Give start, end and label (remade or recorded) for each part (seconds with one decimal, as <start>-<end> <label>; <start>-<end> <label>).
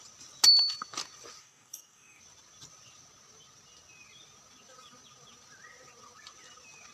0.0-1.4 recorded; 1.4-2.2 remade; 2.2-6.9 recorded